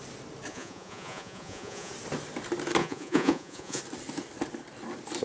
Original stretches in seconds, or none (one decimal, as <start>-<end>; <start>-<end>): 0.0-0.5; 1.9-2.8; 3.8-5.2